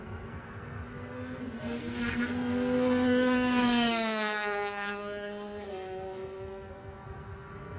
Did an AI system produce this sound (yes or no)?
yes